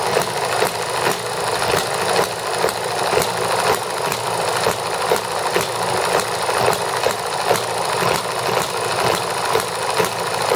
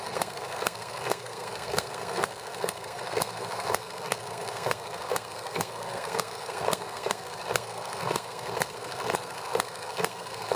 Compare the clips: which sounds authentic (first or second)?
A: first